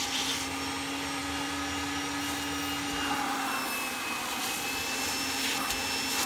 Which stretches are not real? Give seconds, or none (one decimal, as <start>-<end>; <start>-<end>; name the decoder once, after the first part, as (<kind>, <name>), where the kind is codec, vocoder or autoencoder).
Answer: none